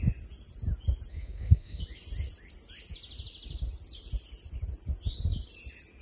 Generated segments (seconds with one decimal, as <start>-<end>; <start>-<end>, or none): 1.1-1.8